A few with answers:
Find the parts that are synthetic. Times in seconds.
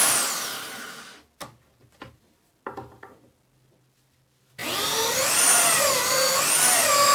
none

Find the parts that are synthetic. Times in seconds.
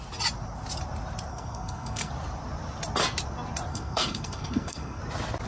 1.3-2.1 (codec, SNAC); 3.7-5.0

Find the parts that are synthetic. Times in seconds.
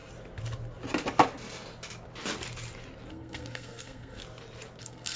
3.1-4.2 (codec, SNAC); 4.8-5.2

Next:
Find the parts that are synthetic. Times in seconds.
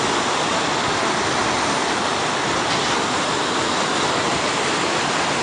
none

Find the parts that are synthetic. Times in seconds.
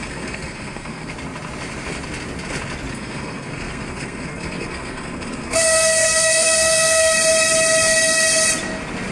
0.0-1.1 (codec, SNAC); 2.9-7.1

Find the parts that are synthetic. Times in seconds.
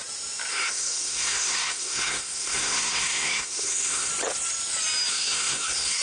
0.5-4.1 (codec, SNAC); 5.1-6.0